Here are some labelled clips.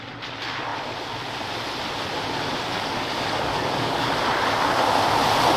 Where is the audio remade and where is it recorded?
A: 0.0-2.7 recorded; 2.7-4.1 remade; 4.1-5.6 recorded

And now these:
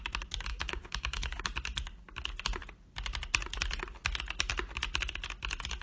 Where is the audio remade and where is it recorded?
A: 0.0-0.5 recorded; 0.5-1.4 remade; 1.4-5.8 recorded

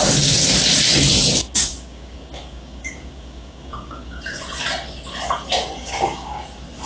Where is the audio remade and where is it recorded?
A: 0.0-1.4 recorded; 1.4-4.4 remade; 4.4-5.8 recorded; 5.8-6.4 remade; 6.4-6.9 recorded

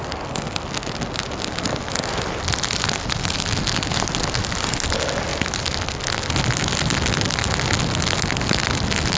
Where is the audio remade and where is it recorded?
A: 0.0-9.2 recorded